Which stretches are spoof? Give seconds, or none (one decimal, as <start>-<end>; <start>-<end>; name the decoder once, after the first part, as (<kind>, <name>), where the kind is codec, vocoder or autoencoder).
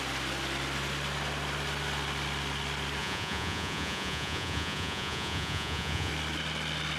3.0-6.1 (vocoder, Vocos)